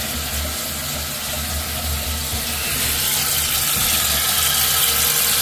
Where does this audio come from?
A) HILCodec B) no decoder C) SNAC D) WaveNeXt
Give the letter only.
B